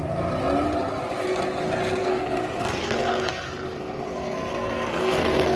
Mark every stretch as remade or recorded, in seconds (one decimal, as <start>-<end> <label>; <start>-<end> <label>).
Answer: 0.0-2.0 recorded; 2.0-5.6 remade